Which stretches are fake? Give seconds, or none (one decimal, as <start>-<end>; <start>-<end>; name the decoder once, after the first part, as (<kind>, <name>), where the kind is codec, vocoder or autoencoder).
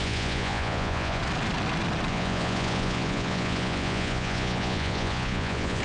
0.0-1.2 (vocoder, Vocos); 2.1-5.8